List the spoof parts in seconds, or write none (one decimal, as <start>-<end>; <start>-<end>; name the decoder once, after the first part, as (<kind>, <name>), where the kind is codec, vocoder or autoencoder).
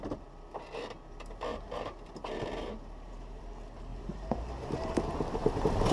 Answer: 1.5-3.4 (vocoder, BigVGAN v2); 3.9-5.0; 5.4-5.9